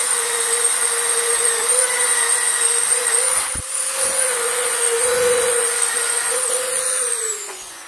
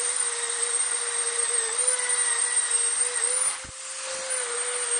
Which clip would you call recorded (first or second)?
second